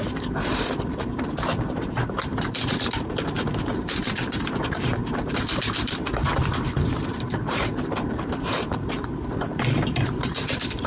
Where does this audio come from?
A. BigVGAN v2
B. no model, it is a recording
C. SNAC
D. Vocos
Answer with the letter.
A